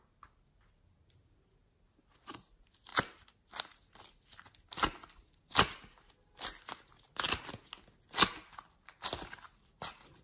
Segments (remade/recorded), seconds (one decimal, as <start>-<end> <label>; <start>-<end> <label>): 0.0-10.2 recorded